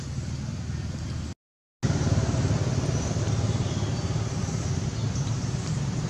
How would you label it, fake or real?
real